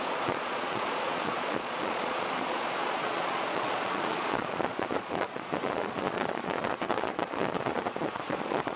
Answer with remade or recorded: remade